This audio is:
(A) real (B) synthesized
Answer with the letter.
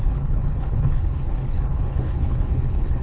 B